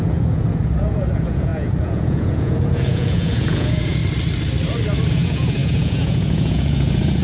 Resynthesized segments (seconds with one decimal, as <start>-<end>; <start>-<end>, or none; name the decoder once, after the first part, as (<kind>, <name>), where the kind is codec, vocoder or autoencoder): 0.0-4.0 (vocoder, Vocos); 5.1-7.2

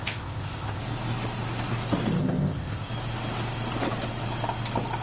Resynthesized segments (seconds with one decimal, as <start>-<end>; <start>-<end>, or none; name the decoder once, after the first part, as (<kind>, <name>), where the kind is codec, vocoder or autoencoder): 0.0-0.8 (codec, ZipCodec); 2.2-2.9

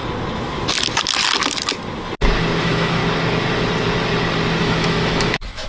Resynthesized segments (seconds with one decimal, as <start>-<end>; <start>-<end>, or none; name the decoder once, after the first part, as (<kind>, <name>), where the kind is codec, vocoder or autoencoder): 2.6-3.0 (autoencoder, DAC-VAE); 4.6-5.7

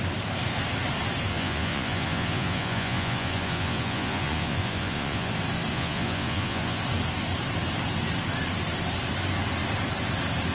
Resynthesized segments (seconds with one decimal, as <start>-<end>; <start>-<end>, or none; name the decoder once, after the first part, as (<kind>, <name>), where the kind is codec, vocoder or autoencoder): 1.3-5.3 (vocoder, Vocos); 5.7-6.8

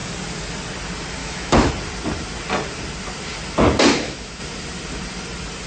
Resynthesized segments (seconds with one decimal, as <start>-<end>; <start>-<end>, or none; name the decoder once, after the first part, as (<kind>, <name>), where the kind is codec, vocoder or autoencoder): 1.2-1.7 (autoencoder, DAC-VAE); 3.9-4.4